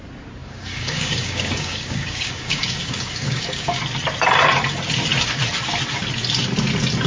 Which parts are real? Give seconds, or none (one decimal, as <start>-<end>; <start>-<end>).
0.0-0.4; 3.8-7.1